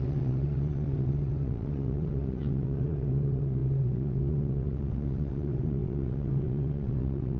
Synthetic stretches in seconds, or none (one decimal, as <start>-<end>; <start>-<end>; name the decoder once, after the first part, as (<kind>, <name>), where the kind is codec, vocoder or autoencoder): 0.0-7.4 (vocoder, WaveNeXt)